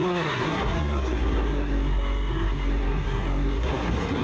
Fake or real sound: fake